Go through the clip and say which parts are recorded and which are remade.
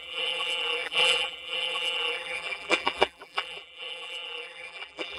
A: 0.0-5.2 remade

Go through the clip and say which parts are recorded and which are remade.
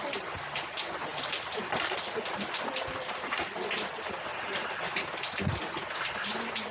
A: 0.0-1.1 recorded; 1.1-2.1 remade; 2.1-6.7 recorded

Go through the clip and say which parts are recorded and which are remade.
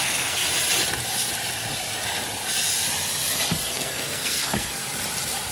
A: 0.0-0.4 remade; 0.4-3.7 recorded; 3.7-4.8 remade; 4.8-5.5 recorded